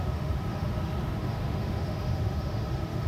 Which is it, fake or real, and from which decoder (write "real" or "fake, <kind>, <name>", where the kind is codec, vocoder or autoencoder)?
fake, autoencoder, DAC-VAE